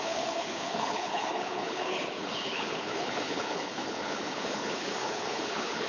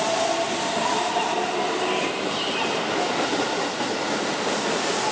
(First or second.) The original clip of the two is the second